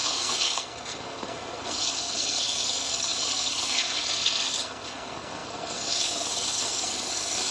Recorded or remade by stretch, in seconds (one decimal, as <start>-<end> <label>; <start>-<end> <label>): 0.0-7.5 remade